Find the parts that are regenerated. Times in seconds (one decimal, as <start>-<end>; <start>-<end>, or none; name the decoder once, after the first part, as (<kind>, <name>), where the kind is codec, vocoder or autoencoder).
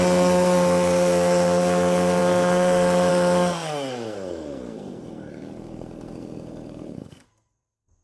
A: 0.0-8.0 (codec, SNAC)